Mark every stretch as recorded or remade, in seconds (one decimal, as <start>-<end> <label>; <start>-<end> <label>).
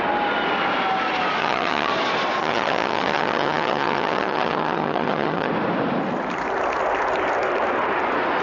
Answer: 0.0-1.4 recorded; 1.4-1.9 remade; 1.9-2.4 recorded; 2.4-5.5 remade; 5.5-8.4 recorded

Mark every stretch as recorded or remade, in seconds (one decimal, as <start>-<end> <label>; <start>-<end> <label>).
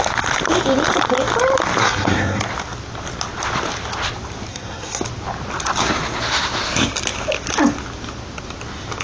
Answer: 0.0-1.8 recorded; 1.8-2.4 remade; 2.4-4.5 recorded; 4.5-5.0 remade; 5.0-9.0 recorded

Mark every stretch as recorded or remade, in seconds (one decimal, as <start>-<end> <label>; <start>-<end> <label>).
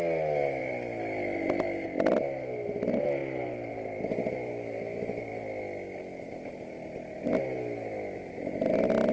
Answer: 0.0-9.1 recorded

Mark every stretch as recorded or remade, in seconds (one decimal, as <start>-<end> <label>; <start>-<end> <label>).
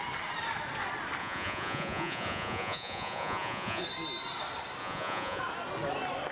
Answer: 0.0-1.2 recorded; 1.2-3.8 remade; 3.8-4.8 recorded; 4.8-5.4 remade; 5.4-6.3 recorded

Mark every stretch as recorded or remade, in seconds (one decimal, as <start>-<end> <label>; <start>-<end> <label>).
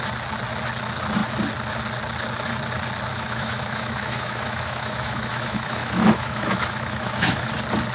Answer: 0.0-3.1 recorded; 3.1-7.5 remade; 7.5-7.9 recorded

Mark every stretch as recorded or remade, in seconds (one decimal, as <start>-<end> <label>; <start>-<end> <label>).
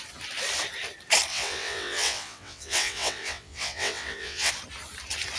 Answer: 0.0-1.3 recorded; 1.3-4.5 remade; 4.5-5.4 recorded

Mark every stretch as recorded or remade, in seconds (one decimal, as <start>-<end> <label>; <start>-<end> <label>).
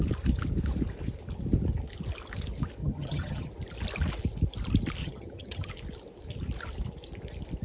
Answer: 0.0-2.8 recorded; 2.8-3.5 remade; 3.5-5.0 recorded; 5.0-5.7 remade; 5.7-7.6 recorded